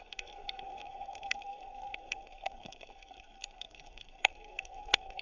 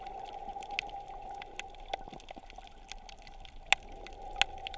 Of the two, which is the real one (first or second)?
second